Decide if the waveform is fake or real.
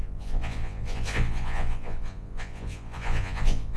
fake